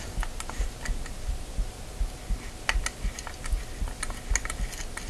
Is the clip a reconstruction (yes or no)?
no